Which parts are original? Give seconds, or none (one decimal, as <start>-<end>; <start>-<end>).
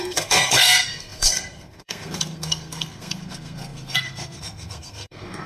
none